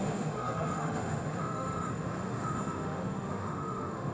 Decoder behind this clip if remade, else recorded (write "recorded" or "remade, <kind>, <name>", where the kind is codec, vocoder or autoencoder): remade, autoencoder, DAC-VAE